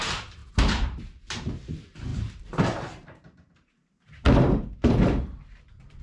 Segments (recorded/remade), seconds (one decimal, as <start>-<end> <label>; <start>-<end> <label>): 0.0-6.0 remade